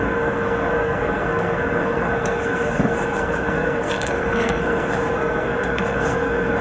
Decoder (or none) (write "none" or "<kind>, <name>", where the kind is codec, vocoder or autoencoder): codec, SNAC